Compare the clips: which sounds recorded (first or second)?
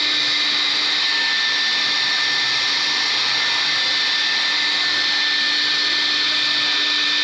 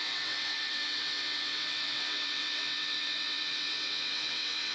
first